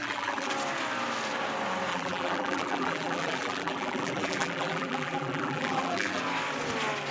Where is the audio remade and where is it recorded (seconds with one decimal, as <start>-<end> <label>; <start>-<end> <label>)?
0.0-0.5 remade; 0.5-1.9 recorded; 1.9-6.2 remade; 6.2-7.1 recorded